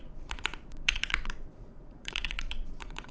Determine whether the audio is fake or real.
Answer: fake